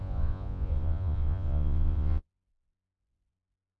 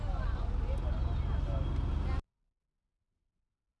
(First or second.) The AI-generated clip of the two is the first